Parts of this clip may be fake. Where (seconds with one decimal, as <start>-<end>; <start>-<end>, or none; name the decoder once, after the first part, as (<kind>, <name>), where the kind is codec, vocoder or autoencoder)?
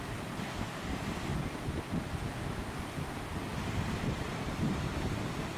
1.3-2.8 (vocoder, BigVGAN v2)